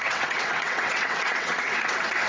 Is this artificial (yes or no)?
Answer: yes